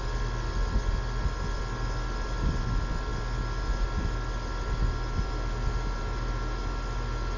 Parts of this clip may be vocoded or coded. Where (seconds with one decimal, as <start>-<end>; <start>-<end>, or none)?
none